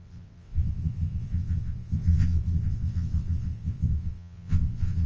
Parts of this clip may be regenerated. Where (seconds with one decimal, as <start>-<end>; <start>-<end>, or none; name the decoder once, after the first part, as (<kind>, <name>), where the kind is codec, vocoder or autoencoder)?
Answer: 0.0-5.1 (vocoder, WaveNeXt)